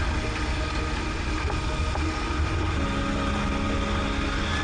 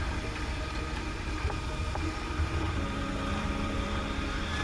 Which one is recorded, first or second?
first